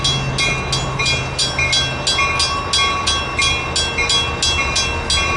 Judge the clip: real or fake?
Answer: real